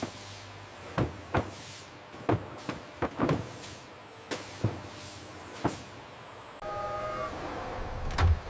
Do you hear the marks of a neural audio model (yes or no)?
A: no